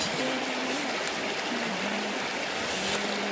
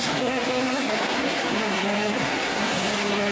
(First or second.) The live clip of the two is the first